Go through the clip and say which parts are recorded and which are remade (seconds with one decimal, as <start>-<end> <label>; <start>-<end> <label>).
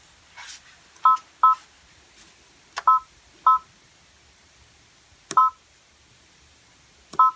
0.0-7.4 recorded